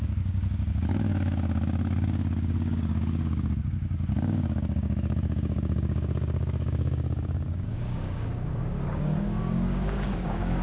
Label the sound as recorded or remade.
remade